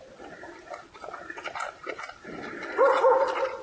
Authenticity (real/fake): real